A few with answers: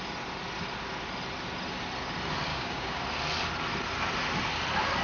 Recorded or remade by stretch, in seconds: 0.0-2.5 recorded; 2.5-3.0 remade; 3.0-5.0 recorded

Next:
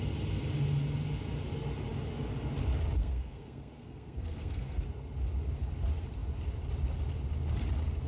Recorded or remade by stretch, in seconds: 0.0-3.0 recorded; 3.0-4.8 remade; 4.8-8.1 recorded

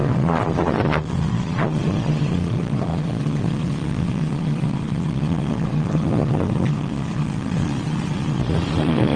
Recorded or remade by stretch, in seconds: 0.0-9.2 remade

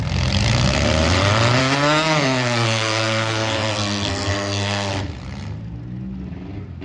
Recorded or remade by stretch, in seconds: 0.0-1.6 recorded; 1.6-4.9 remade; 4.9-6.8 recorded

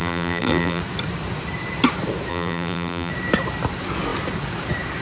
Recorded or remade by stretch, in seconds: 0.0-0.8 remade; 0.8-2.3 recorded; 2.3-3.1 remade; 3.1-5.0 recorded